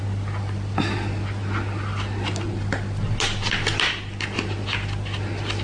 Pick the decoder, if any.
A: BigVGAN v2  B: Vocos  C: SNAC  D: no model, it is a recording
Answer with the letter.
D